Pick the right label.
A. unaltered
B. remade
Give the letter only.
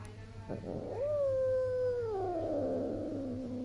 A